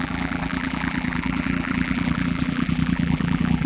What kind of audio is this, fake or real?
fake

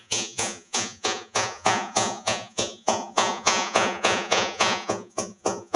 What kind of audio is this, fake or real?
fake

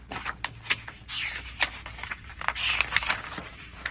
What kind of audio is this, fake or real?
real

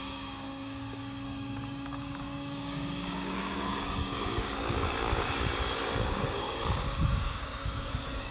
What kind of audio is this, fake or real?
fake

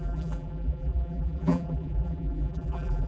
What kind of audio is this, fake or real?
fake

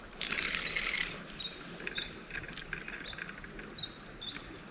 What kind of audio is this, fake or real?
real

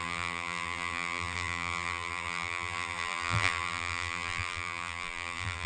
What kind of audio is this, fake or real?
fake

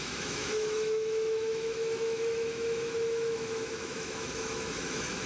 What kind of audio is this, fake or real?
fake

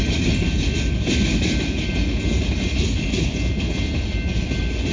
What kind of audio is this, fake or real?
real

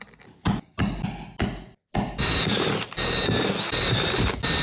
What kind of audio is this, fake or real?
real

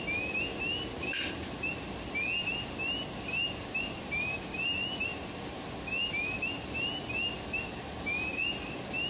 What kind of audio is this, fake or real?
real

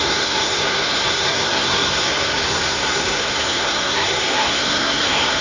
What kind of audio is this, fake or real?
fake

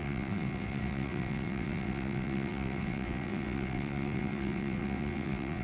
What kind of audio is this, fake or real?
fake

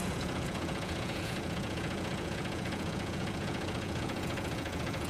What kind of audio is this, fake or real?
fake